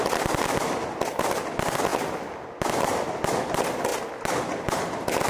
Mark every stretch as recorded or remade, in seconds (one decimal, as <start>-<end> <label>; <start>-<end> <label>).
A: 0.0-5.3 recorded